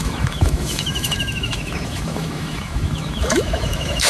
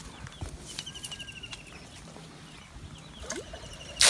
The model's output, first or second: first